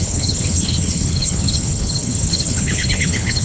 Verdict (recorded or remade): remade